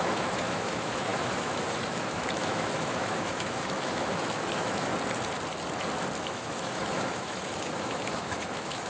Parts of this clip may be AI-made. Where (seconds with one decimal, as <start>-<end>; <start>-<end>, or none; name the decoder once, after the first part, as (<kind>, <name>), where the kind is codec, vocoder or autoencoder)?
0.0-4.9 (autoencoder, DAC-VAE); 6.2-8.9